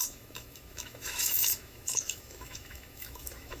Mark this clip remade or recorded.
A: remade